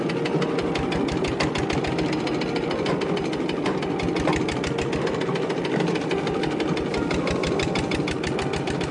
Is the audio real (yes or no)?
yes